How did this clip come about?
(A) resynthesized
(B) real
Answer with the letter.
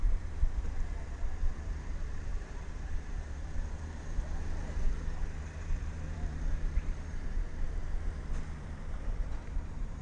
A